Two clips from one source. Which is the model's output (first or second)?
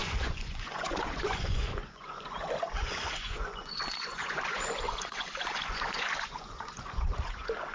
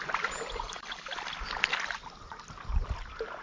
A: first